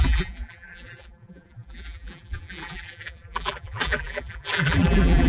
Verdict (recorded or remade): remade